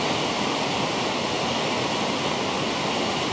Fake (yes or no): no